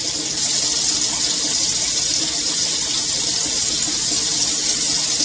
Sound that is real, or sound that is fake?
real